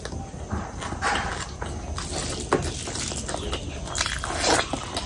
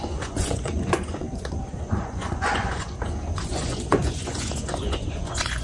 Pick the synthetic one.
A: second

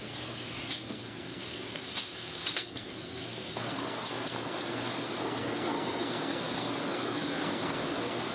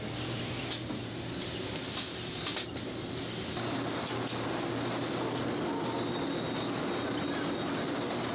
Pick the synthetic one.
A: first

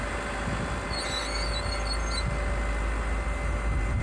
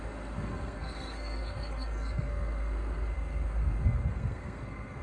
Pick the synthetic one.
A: second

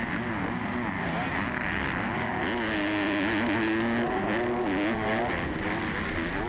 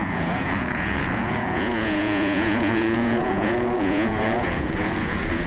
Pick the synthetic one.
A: second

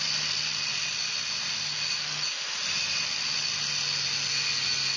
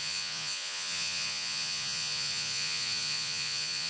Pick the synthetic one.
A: second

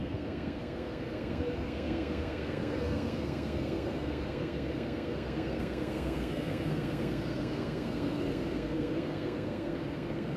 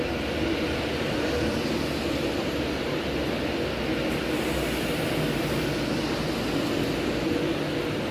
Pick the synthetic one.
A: first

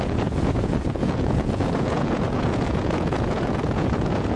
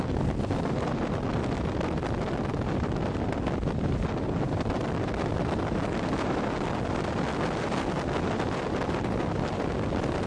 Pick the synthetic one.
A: first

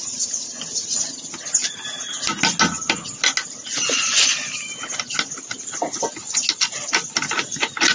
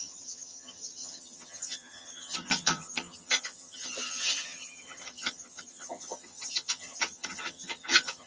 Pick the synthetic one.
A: second